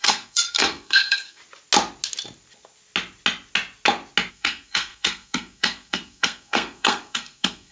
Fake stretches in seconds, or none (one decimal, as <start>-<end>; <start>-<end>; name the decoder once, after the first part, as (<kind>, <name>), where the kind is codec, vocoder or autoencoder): 0.0-1.4 (codec, SNAC); 4.3-7.7